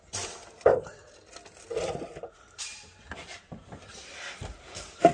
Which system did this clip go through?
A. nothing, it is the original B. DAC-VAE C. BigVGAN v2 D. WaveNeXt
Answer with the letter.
C